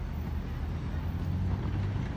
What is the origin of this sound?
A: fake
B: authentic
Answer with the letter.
B